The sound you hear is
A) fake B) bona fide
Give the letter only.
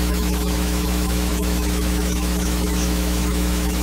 A